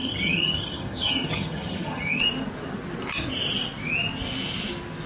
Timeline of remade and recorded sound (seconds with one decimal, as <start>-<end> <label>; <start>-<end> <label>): 0.0-2.2 remade; 2.2-5.1 recorded